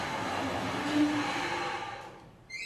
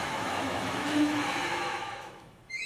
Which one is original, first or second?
first